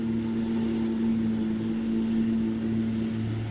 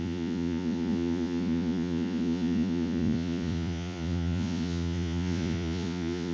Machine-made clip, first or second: second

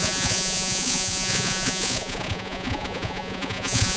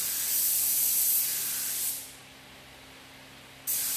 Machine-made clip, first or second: first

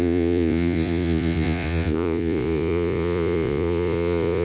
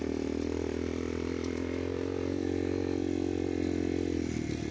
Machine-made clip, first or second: first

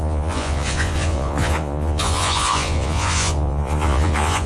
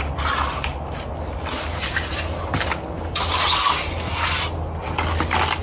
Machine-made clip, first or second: first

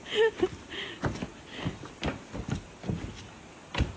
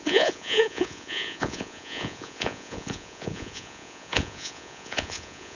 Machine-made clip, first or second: second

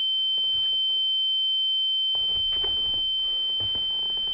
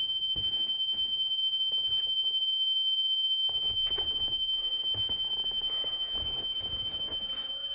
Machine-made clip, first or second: second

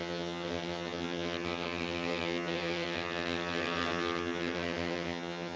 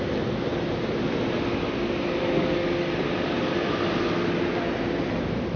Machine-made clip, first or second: first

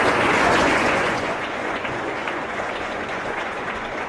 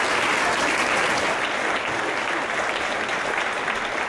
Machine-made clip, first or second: first